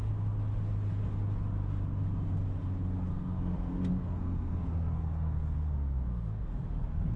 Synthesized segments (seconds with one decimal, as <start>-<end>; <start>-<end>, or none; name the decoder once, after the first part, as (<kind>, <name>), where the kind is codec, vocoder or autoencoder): 3.1-7.2 (codec, SNAC)